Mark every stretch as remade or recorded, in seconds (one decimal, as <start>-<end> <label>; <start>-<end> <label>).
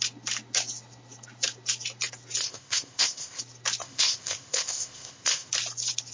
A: 0.0-2.4 recorded; 2.4-3.4 remade; 3.4-3.8 recorded; 3.8-5.5 remade; 5.5-6.1 recorded